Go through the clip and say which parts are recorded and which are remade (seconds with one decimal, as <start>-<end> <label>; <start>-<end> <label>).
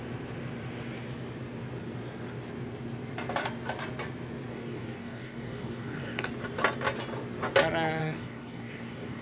0.0-4.5 recorded; 4.5-6.3 remade; 6.3-8.0 recorded; 8.0-9.2 remade